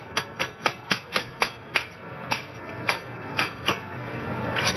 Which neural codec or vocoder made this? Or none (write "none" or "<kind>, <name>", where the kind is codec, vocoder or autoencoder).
codec, SNAC